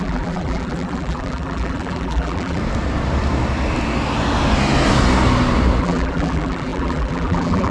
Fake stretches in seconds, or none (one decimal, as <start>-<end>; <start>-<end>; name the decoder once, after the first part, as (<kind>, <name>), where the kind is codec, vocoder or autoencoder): 0.0-2.6 (vocoder, BigVGAN v2); 5.8-7.7